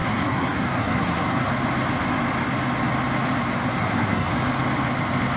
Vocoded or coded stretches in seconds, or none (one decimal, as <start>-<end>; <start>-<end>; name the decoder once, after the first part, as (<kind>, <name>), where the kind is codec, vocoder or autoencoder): 0.0-1.5 (codec, SNAC); 3.7-4.3